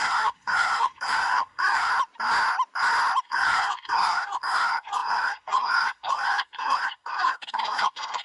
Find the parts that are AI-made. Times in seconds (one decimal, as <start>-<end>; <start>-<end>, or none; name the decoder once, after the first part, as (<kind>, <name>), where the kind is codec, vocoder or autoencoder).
0.0-1.9 (codec, SNAC); 3.2-8.2